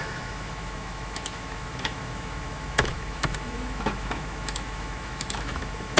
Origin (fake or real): fake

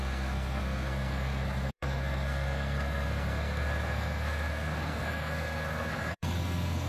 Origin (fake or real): fake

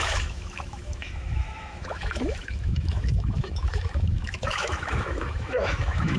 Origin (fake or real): fake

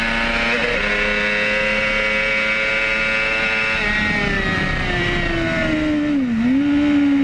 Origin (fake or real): real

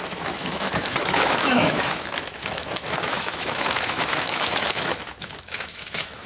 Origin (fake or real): fake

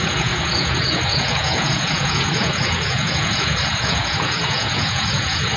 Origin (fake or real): fake